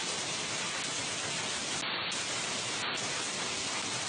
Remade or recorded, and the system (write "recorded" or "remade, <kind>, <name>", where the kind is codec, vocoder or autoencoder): recorded